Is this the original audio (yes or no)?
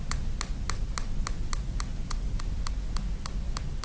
yes